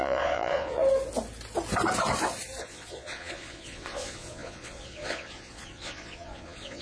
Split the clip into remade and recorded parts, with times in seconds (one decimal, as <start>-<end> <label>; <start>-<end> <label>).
0.0-0.8 remade; 0.8-2.6 recorded; 2.6-6.8 remade